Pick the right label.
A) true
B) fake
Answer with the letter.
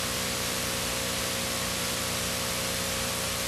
A